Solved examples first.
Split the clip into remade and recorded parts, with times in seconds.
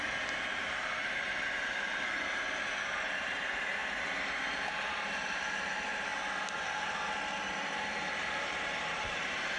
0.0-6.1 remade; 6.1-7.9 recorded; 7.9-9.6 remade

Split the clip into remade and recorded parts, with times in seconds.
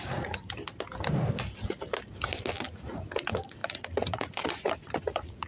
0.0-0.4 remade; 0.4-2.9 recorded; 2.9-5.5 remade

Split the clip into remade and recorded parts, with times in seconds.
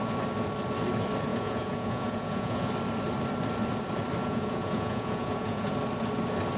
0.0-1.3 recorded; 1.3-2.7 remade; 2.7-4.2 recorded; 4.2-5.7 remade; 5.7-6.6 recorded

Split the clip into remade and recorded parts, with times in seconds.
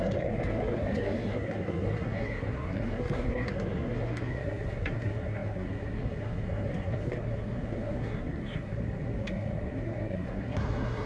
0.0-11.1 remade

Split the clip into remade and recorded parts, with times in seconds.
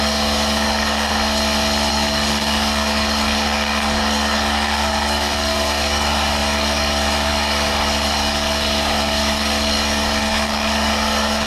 0.0-1.1 remade; 1.1-1.9 recorded; 1.9-11.5 remade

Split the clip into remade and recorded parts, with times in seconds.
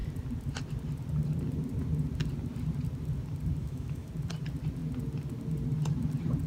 0.0-3.6 recorded; 3.6-4.1 remade; 4.1-6.5 recorded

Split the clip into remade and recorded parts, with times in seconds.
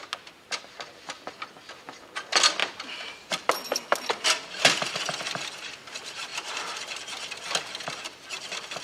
0.0-8.8 recorded